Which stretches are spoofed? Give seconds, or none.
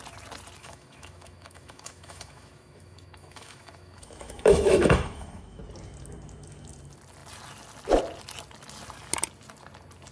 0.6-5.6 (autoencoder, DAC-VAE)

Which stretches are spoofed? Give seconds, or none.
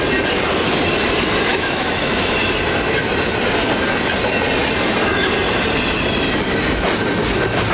1.5-2.2 (autoencoder, DAC-VAE)